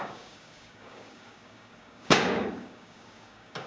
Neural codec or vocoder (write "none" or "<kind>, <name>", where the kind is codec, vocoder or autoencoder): codec, DAC